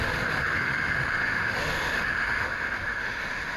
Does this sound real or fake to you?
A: fake